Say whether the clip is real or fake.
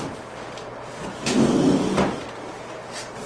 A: real